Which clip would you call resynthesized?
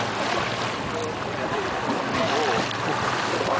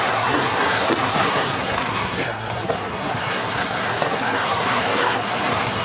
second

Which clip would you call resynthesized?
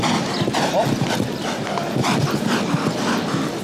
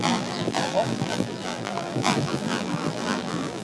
second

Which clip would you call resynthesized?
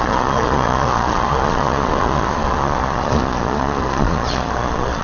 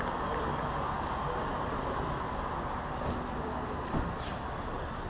first